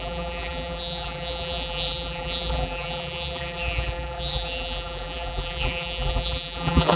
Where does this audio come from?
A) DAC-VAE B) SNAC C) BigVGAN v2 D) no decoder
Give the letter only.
C